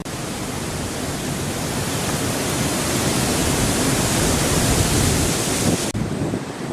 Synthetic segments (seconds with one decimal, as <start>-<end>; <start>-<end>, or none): 0.0-1.5; 3.4-5.4